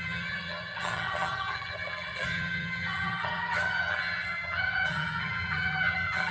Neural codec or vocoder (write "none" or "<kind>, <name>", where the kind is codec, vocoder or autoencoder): vocoder, HiFi-GAN